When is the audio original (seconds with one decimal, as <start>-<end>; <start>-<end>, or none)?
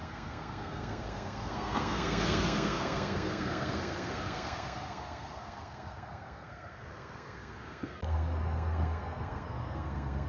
none